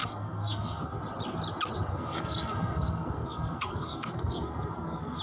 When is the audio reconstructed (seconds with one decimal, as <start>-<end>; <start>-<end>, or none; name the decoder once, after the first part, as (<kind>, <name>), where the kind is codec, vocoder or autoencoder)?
0.0-1.0 (codec, SNAC); 1.9-5.2